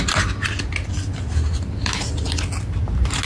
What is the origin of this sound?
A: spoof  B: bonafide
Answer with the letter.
B